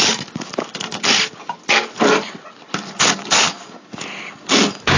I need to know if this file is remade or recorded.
recorded